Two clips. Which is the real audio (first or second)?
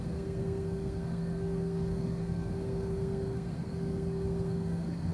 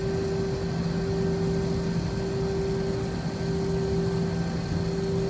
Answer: second